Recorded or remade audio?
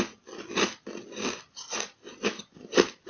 recorded